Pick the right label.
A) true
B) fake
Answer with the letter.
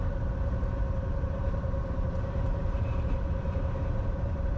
B